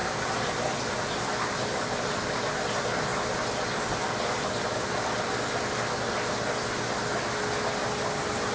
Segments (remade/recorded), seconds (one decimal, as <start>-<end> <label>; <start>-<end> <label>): 0.0-8.5 recorded